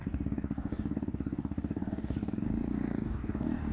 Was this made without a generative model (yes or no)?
no